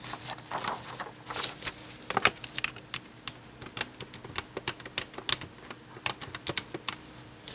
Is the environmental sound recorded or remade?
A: recorded